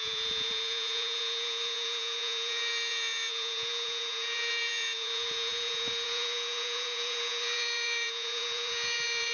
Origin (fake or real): fake